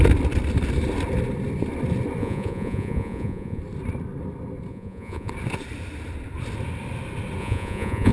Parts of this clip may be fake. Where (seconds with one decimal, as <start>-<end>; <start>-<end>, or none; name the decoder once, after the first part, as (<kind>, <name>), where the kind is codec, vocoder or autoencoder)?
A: 2.2-3.6 (vocoder, Vocos); 4.7-5.3; 7.4-8.1